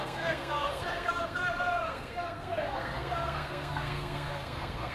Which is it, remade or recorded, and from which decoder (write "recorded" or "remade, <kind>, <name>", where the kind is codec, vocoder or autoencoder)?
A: remade, codec, SNAC